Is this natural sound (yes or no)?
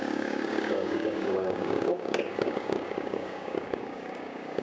no